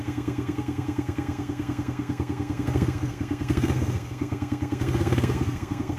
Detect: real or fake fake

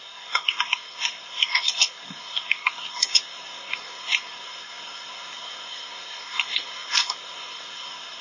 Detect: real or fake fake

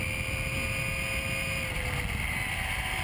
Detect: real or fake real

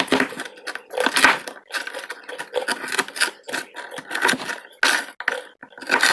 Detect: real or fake real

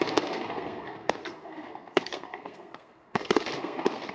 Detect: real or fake fake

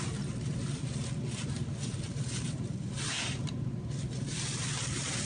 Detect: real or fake real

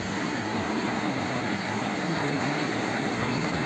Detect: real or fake fake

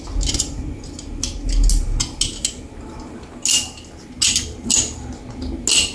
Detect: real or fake real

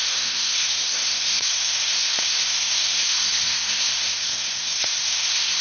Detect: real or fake fake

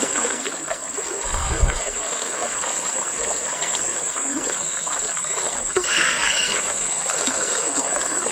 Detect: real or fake fake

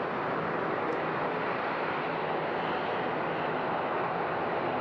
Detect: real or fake real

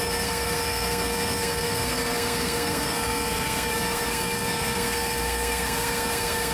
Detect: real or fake fake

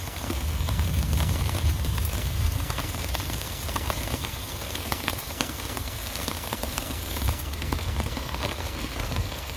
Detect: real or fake fake